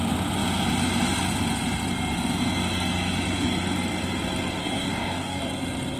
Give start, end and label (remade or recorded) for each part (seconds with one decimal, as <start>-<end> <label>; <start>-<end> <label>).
0.0-4.6 recorded; 4.6-5.4 remade; 5.4-6.0 recorded